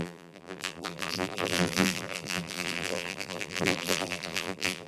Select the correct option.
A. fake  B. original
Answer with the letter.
A